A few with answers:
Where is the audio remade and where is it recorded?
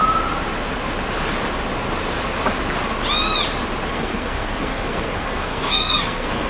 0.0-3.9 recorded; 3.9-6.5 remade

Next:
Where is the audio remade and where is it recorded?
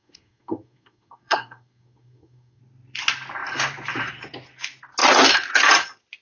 0.0-2.6 remade; 2.6-6.2 recorded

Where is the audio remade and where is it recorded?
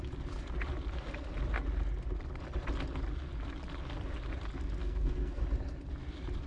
0.0-4.8 recorded; 4.8-5.4 remade; 5.4-6.5 recorded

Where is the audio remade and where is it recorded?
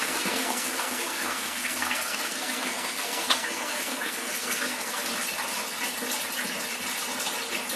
0.0-5.1 remade; 5.1-7.8 recorded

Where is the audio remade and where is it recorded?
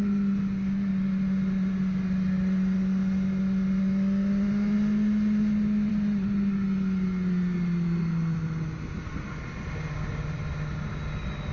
0.0-11.5 recorded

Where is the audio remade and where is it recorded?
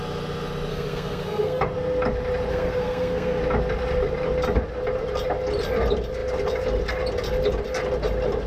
0.0-0.7 recorded; 0.7-1.6 remade; 1.6-2.5 recorded; 2.5-3.4 remade; 3.4-8.5 recorded